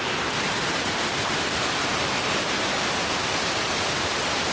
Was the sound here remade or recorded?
recorded